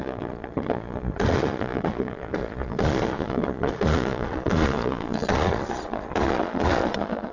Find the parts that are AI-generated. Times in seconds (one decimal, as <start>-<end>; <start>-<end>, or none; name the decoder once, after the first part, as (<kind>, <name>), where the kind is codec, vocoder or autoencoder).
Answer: 0.0-7.3 (vocoder, Vocos)